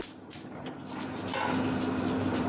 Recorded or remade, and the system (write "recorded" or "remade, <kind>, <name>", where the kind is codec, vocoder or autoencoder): recorded